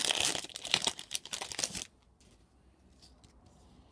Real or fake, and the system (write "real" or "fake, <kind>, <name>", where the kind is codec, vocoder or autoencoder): real